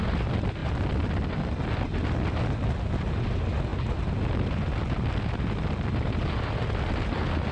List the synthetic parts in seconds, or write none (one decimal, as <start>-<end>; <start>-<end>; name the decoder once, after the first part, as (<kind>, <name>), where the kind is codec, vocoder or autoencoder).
none